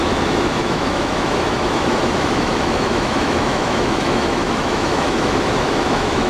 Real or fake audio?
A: fake